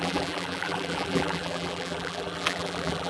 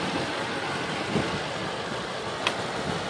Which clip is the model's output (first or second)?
first